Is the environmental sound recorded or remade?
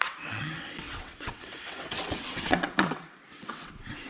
remade